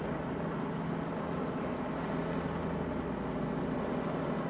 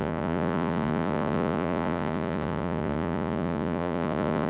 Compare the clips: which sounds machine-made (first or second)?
second